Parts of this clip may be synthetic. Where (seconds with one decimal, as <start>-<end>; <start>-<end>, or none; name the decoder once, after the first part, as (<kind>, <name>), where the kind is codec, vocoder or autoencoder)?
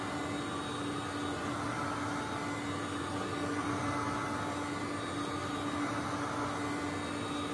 none